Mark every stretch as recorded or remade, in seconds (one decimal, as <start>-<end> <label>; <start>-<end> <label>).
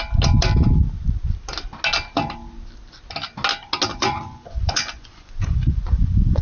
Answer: 0.0-3.9 recorded; 3.9-6.4 remade